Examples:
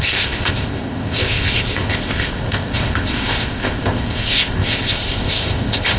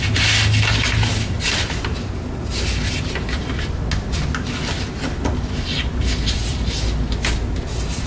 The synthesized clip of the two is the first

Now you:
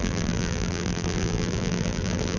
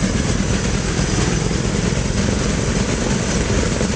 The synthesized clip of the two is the first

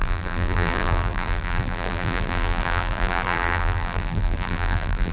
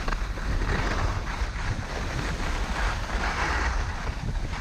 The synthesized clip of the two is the first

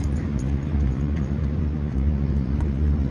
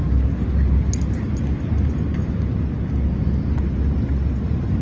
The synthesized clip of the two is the first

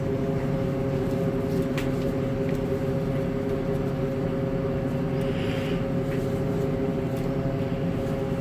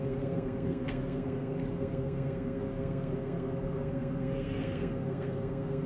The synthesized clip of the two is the second